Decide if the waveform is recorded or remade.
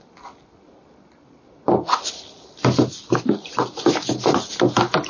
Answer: recorded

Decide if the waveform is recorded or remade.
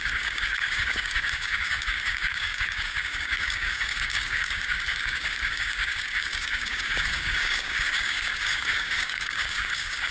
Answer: remade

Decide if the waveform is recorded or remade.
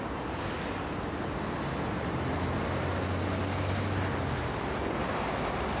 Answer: recorded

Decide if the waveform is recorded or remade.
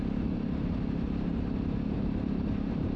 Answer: remade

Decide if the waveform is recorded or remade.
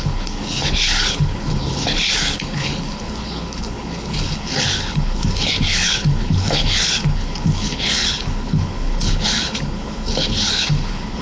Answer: remade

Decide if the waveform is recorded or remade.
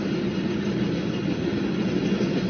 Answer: recorded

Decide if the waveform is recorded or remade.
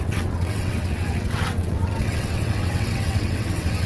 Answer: remade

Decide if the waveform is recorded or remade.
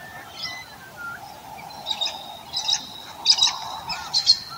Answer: recorded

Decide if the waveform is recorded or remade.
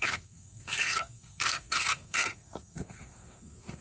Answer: remade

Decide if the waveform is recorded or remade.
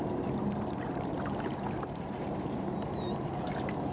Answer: remade